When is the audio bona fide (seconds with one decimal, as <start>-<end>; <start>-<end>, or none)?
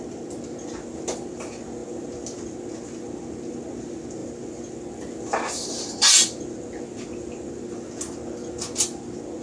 0.0-9.4